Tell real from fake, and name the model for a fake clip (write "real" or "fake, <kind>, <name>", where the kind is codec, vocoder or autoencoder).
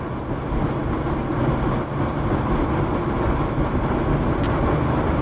real